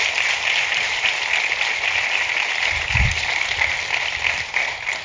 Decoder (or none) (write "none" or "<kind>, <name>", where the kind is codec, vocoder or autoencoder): none